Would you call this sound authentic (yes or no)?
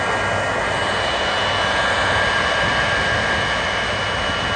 yes